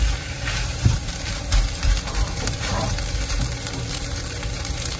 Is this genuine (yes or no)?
no